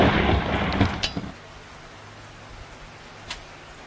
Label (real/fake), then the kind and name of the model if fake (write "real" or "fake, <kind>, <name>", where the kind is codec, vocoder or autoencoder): real